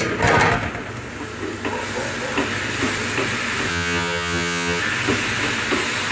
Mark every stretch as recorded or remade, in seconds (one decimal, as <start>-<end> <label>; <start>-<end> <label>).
0.0-3.7 recorded; 3.7-4.8 remade; 4.8-6.1 recorded